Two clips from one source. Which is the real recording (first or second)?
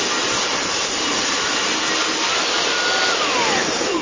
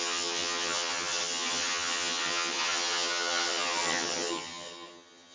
first